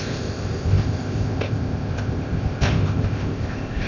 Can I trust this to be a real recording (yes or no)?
no